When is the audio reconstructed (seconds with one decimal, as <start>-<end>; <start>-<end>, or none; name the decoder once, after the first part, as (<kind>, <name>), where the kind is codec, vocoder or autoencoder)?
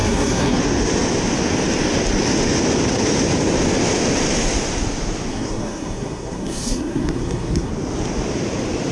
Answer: 0.0-0.6 (codec, SNAC); 5.3-7.7